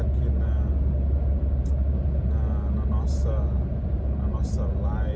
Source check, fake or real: real